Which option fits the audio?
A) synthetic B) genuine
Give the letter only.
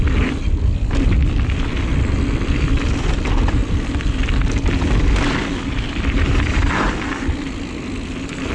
B